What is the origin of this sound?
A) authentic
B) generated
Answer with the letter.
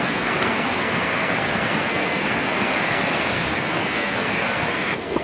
B